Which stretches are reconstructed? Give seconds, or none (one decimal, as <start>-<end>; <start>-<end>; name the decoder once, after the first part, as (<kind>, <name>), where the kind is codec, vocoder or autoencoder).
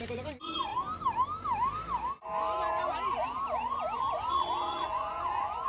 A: 0.0-0.7 (vocoder, Vocos); 4.1-5.7